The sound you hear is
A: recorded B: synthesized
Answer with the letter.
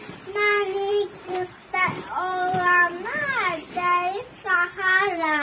B